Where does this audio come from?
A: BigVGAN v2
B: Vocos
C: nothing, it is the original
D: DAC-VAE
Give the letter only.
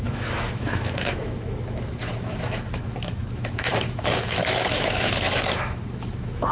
D